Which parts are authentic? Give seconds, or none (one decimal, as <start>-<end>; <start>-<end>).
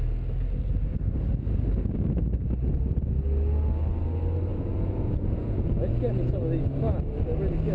0.0-4.5; 5.9-7.7